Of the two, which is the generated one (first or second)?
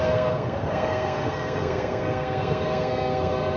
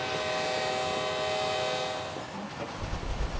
first